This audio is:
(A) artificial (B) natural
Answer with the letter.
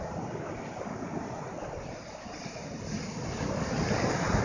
B